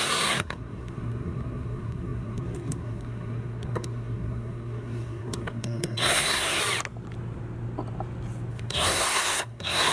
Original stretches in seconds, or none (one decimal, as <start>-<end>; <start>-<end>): 6.6-8.5